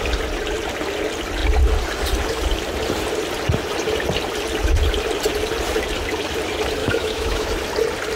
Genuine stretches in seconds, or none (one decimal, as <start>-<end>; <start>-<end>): 0.0-6.8; 7.5-8.2